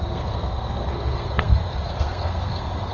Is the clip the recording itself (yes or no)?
no